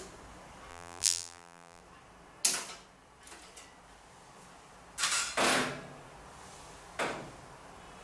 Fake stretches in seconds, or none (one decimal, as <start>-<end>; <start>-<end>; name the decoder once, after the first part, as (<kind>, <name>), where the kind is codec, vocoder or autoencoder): 0.7-1.8 (vocoder, BigVGAN v2)

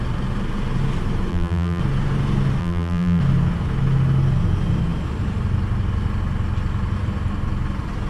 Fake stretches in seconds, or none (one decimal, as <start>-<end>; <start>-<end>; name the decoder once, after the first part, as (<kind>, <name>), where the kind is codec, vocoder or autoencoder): 1.3-1.8 (vocoder, BigVGAN v2); 2.6-3.2

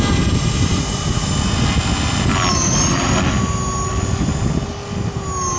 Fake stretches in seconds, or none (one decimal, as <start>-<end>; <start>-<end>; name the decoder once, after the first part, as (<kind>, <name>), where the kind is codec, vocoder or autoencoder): 0.7-1.3 (vocoder, BigVGAN v2)

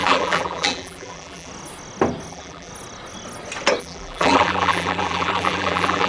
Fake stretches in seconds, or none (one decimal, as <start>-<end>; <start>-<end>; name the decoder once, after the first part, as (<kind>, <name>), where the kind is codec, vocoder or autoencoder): 0.0-1.5 (vocoder, BigVGAN v2); 2.3-2.7; 3.8-6.1

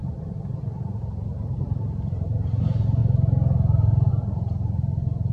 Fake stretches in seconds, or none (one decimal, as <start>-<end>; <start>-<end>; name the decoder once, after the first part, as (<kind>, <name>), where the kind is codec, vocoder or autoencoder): 0.0-2.6 (vocoder, BigVGAN v2)

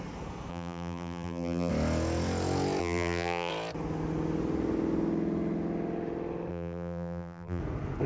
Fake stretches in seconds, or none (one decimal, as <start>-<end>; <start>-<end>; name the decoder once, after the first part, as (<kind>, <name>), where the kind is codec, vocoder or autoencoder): 0.5-1.7 (vocoder, BigVGAN v2); 2.8-3.5; 6.5-7.6

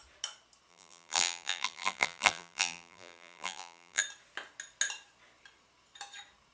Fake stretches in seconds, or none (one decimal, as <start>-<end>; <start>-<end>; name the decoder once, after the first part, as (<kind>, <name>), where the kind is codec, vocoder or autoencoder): 0.7-4.0 (vocoder, BigVGAN v2)

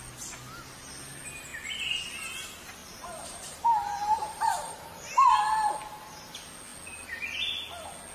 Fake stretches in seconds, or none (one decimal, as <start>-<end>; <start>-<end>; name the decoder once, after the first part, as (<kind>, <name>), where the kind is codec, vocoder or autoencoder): 2.8-5.4 (vocoder, BigVGAN v2)